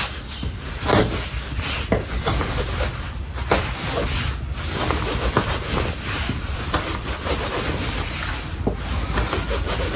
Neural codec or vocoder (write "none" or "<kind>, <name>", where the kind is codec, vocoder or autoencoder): none